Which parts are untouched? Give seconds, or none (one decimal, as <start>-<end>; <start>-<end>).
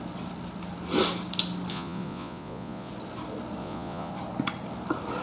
0.0-1.7; 2.9-3.6; 4.1-5.2